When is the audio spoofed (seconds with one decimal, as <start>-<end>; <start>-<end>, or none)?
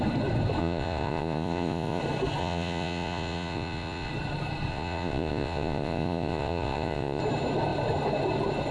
0.6-2.0; 2.4-4.1; 4.7-7.2